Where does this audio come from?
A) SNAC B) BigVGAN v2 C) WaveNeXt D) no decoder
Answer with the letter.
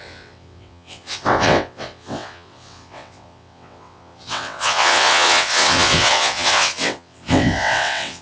C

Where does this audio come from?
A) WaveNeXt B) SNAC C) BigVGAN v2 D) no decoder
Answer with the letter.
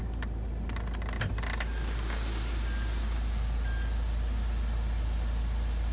D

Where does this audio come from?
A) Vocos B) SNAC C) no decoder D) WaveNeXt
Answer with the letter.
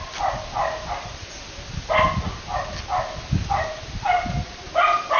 C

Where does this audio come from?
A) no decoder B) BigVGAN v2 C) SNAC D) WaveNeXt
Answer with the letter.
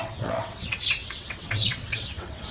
D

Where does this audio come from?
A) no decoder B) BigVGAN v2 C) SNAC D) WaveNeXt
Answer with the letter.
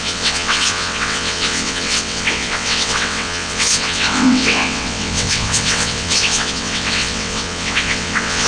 D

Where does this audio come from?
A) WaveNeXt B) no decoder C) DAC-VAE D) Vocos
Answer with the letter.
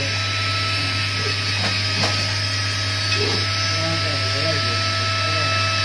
B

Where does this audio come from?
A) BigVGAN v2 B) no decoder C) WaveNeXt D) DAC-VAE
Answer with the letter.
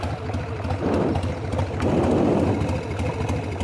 B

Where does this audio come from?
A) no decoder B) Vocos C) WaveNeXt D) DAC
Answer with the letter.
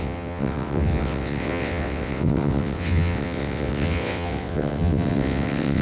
C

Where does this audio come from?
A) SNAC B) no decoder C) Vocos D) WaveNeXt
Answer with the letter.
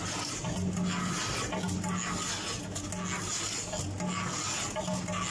B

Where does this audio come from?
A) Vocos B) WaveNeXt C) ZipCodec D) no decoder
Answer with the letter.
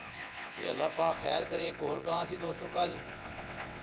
B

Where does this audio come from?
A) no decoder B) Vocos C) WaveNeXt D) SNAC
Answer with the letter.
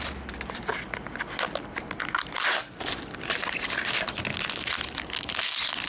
A